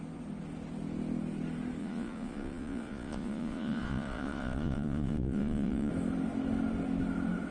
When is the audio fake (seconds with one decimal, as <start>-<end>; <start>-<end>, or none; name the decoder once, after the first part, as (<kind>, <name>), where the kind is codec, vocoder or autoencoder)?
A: 1.8-5.9 (vocoder, Vocos)